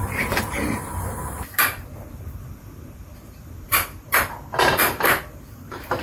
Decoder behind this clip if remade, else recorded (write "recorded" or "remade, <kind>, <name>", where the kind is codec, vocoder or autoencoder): remade, vocoder, BigVGAN v2